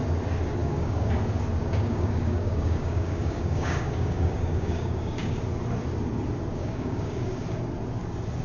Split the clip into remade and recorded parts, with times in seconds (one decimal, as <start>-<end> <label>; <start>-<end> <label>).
0.0-0.6 recorded; 0.6-1.1 remade; 1.1-1.6 recorded; 1.6-5.4 remade; 5.4-6.5 recorded; 6.5-7.4 remade; 7.4-8.4 recorded